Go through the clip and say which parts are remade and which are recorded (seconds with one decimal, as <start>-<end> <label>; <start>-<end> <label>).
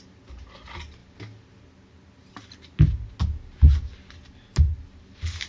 0.0-5.5 recorded